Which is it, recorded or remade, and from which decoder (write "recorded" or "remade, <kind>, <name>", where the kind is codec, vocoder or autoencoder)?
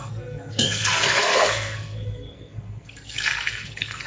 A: remade, codec, SNAC